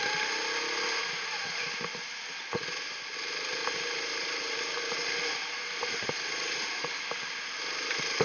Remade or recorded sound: recorded